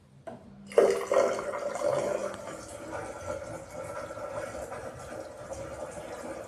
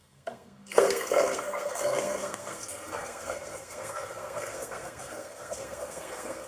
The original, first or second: first